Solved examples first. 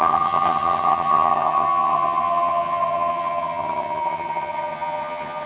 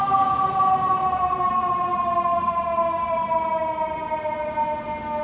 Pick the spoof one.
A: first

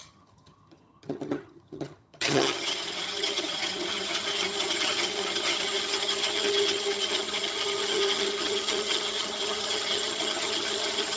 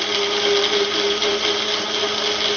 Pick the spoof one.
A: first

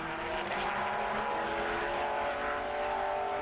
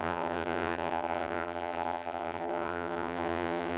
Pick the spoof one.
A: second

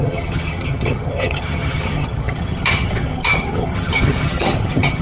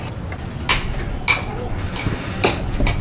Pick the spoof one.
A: first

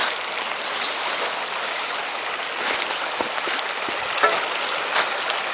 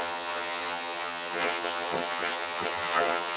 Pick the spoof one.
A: second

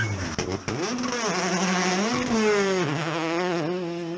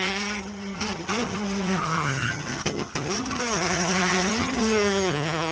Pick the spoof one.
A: second